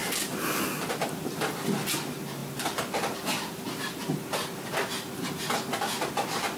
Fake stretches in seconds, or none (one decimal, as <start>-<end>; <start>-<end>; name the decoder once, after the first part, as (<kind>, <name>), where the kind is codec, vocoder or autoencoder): none